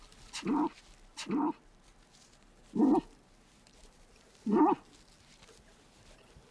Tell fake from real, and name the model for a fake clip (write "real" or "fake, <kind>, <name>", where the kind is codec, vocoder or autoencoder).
real